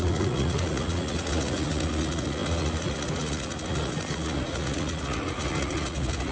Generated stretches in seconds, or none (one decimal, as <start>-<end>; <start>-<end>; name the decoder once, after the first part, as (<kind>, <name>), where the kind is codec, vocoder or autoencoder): 0.0-6.3 (vocoder, Vocos)

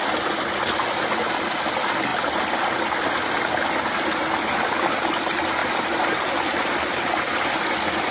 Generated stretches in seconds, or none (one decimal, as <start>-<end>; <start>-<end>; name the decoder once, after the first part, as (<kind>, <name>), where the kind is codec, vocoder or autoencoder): none

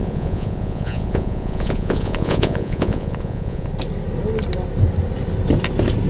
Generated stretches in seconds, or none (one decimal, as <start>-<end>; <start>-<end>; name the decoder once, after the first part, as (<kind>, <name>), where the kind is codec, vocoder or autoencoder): 0.0-3.7 (vocoder, Vocos)

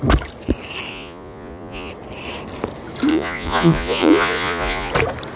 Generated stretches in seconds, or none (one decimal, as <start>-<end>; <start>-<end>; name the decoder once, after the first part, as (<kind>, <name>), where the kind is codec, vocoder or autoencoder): 0.9-1.9 (vocoder, Vocos); 3.1-4.9

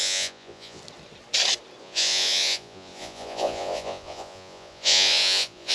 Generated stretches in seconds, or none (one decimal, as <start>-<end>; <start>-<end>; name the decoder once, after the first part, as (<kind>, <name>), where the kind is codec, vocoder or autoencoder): 0.0-0.8 (vocoder, Vocos); 1.8-5.7

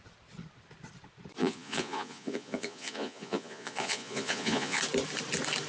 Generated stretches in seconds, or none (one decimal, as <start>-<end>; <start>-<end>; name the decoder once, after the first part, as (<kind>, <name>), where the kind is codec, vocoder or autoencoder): 1.4-4.8 (vocoder, Vocos)

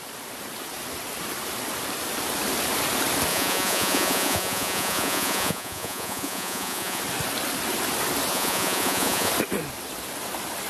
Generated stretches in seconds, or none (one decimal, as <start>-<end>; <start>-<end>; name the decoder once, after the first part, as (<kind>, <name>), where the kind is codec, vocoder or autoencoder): 3.3-7.0 (vocoder, Vocos); 8.3-9.3